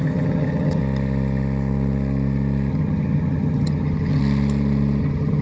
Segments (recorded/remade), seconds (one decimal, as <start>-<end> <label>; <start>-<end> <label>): 0.0-0.8 remade; 0.8-2.7 recorded; 2.7-4.2 remade; 4.2-5.0 recorded; 5.0-5.4 remade